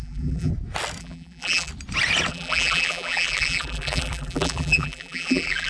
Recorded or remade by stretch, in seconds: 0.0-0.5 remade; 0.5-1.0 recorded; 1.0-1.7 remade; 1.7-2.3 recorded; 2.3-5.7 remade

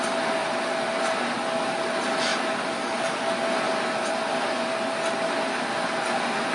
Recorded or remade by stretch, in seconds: 0.0-6.5 recorded

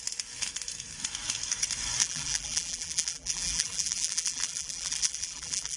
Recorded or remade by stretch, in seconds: 0.0-2.0 recorded; 2.0-5.8 remade

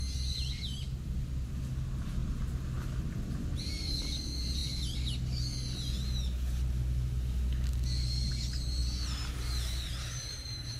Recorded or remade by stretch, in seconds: 0.0-8.8 recorded; 8.8-10.8 remade

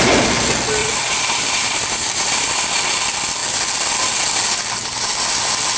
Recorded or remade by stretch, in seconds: 0.0-0.8 recorded; 0.8-2.5 remade; 2.5-5.8 recorded

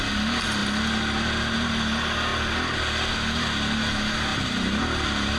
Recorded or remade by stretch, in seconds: 0.0-5.4 recorded

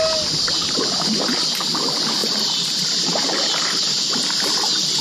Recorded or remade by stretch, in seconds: 0.0-2.2 recorded; 2.2-3.3 remade; 3.3-5.0 recorded